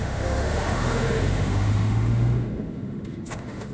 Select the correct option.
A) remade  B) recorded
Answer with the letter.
A